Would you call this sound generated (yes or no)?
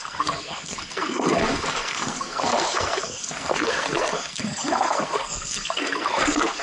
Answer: yes